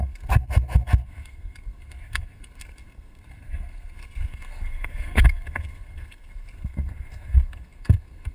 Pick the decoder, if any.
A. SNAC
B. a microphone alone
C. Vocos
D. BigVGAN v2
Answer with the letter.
A